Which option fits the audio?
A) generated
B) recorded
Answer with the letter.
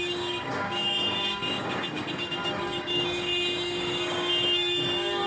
A